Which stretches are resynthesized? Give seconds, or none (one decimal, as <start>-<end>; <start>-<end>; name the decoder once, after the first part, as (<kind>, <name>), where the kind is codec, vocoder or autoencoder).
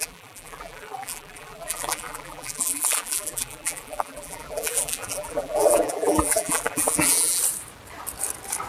0.0-7.4 (vocoder, BigVGAN v2)